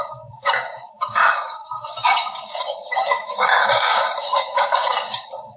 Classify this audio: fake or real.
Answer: fake